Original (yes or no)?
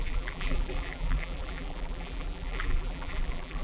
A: no